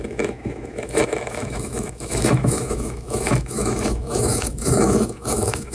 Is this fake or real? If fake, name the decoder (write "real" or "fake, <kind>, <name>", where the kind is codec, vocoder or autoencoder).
fake, autoencoder, DAC-VAE